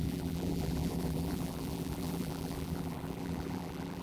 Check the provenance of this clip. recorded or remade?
remade